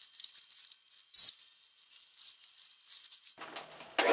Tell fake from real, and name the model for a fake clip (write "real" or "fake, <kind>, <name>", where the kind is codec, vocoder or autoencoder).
real